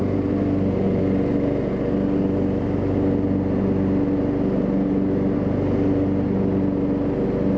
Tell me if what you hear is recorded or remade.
recorded